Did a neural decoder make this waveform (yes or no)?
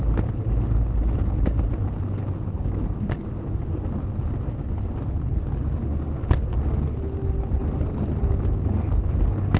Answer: no